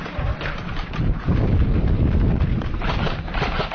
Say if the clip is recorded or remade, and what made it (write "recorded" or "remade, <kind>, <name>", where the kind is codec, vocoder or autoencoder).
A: remade, vocoder, BigVGAN v2